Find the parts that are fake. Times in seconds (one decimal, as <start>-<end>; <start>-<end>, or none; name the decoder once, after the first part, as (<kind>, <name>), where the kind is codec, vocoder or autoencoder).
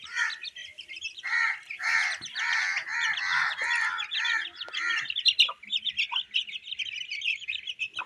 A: none